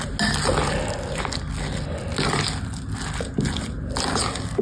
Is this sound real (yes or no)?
yes